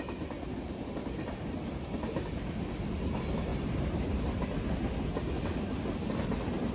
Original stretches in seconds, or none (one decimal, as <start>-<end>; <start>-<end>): 0.0-6.7